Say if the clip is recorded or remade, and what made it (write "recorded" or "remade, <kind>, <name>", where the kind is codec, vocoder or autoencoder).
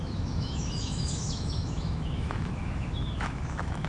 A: remade, autoencoder, DAC-VAE